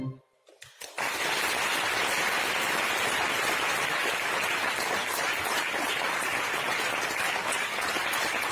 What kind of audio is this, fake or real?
real